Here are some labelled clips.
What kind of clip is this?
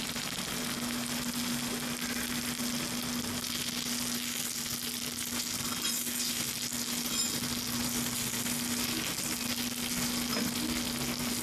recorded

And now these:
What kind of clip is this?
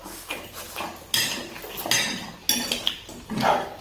recorded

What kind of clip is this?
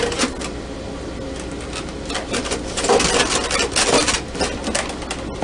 recorded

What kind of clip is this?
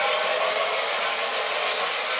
recorded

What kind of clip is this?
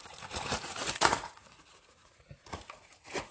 remade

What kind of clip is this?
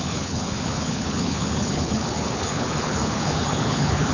remade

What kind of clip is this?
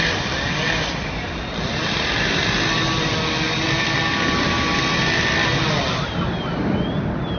recorded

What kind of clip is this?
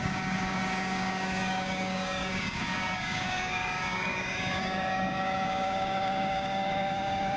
remade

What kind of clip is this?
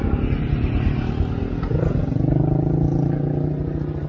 recorded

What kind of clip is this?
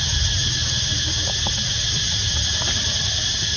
recorded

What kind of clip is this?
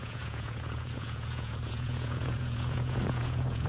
remade